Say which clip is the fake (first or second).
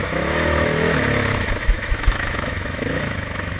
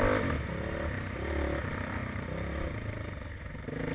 first